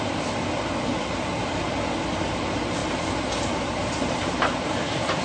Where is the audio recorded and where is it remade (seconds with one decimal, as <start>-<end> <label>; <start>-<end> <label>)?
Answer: 0.0-0.9 recorded; 0.9-1.8 remade; 1.8-2.8 recorded; 2.8-5.2 remade